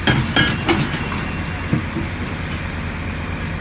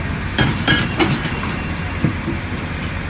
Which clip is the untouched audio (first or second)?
first